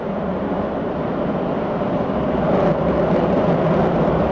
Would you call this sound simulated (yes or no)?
yes